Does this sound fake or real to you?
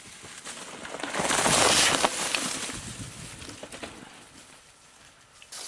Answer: real